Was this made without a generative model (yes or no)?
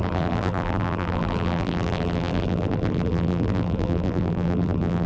no